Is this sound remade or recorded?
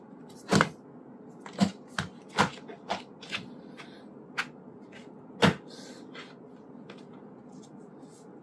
recorded